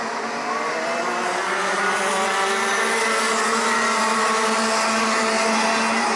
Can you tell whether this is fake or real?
real